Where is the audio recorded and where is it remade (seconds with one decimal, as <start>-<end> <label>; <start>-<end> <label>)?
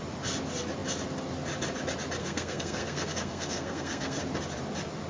0.0-2.2 recorded; 2.2-4.2 remade; 4.2-5.1 recorded